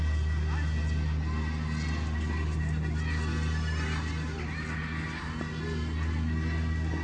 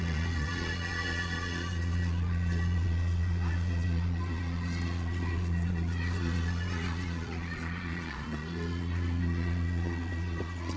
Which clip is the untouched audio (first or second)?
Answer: first